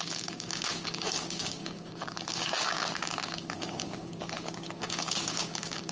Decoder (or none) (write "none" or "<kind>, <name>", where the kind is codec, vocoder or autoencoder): codec, DAC